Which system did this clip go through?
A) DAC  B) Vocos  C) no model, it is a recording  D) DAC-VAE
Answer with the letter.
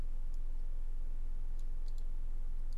C